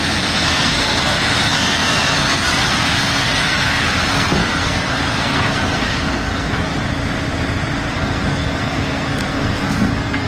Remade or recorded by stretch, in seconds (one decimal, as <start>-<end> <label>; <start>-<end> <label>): 0.0-6.7 remade; 6.7-7.9 recorded; 7.9-10.3 remade